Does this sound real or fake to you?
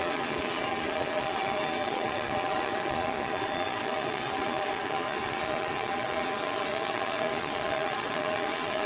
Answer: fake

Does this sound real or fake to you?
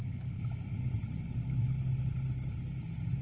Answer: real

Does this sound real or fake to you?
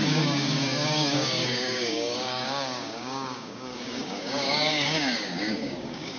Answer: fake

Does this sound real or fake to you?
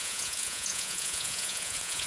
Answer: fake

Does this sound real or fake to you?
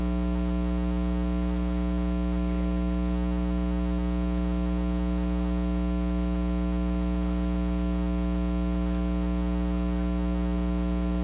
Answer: real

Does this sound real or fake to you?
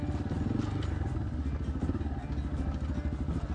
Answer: real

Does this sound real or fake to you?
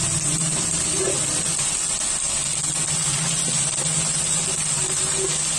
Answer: real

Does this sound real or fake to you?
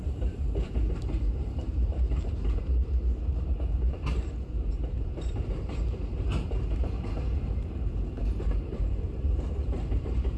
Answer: fake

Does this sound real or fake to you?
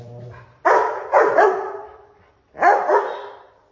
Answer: real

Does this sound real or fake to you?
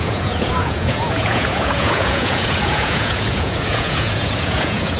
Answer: fake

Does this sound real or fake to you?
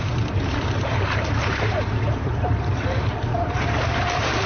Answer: fake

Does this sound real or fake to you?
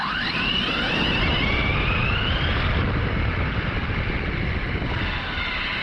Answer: real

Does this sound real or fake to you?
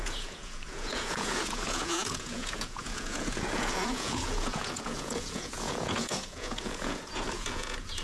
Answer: fake